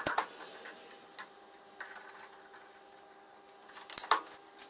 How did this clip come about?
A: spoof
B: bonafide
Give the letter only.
B